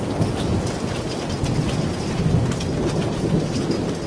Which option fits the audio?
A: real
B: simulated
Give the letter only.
A